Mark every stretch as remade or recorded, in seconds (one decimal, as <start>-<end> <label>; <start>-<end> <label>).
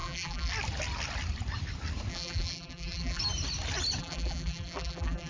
0.0-0.5 remade; 0.5-2.1 recorded; 2.1-3.2 remade; 3.2-4.0 recorded; 4.0-5.3 remade